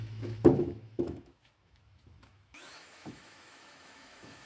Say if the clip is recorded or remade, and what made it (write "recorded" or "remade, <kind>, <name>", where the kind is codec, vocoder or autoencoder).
remade, autoencoder, DAC-VAE